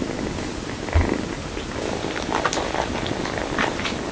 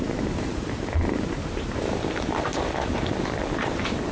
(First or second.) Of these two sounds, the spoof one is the second